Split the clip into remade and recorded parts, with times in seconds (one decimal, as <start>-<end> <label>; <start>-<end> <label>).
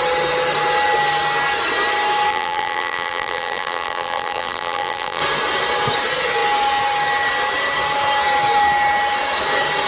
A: 0.0-2.3 recorded; 2.3-5.2 remade; 5.2-9.9 recorded